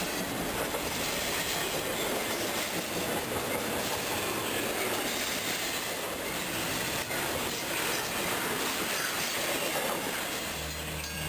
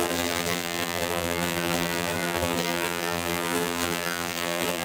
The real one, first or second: first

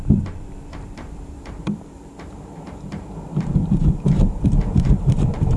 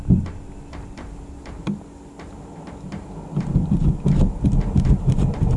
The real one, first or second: second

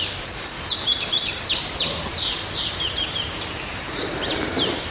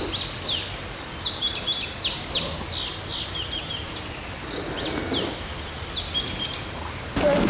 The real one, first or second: second